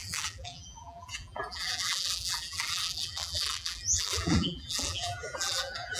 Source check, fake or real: fake